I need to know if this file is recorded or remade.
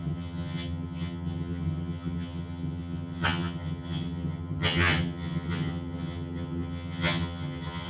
remade